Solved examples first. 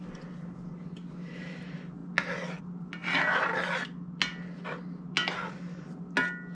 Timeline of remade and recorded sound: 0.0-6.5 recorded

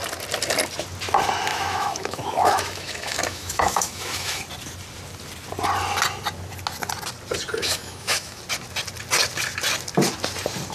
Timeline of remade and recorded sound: 0.0-1.5 recorded; 1.5-4.4 remade; 4.4-7.6 recorded; 7.6-8.4 remade; 8.4-10.7 recorded

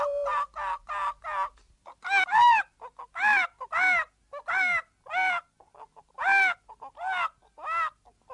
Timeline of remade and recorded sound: 0.0-8.3 recorded

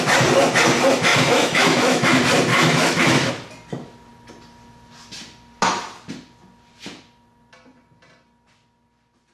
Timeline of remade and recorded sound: 0.0-1.1 recorded; 1.1-2.1 remade; 2.1-2.5 recorded; 2.5-3.3 remade; 3.3-9.3 recorded